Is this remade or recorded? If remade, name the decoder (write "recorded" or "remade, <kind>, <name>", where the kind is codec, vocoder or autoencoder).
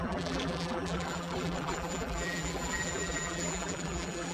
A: remade, vocoder, BigVGAN v2